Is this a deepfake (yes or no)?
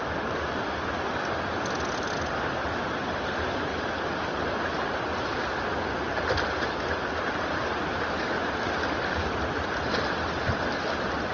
no